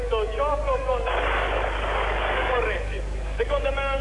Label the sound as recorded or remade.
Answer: remade